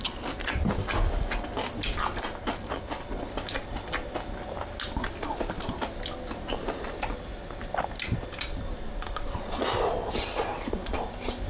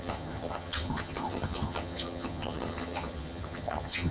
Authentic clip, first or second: first